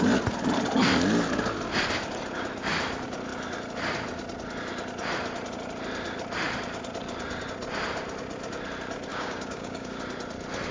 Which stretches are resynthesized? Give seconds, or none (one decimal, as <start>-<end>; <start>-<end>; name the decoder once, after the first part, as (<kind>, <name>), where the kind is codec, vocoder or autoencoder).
9.1-10.0 (codec, DAC)